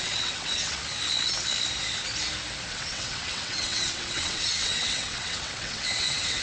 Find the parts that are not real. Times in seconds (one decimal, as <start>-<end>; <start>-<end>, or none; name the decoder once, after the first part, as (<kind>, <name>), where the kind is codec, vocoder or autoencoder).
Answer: 0.0-0.8 (vocoder, WaveNeXt); 2.7-6.4